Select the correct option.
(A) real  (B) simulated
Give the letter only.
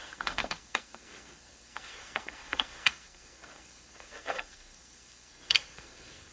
B